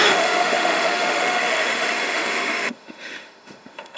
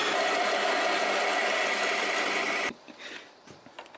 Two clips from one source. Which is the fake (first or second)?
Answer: first